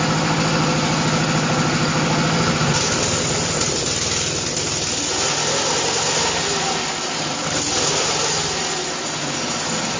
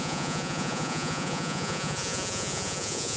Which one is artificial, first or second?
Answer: second